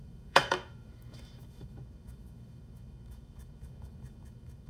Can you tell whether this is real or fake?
fake